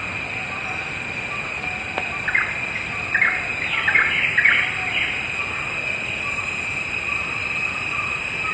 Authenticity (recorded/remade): recorded